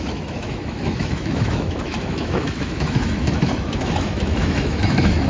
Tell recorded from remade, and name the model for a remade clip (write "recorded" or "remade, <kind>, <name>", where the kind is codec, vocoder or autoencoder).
remade, autoencoder, DAC-VAE